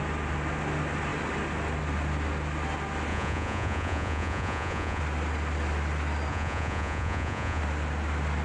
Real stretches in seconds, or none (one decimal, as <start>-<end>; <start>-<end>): 0.0-3.1; 5.0-6.3; 7.6-8.4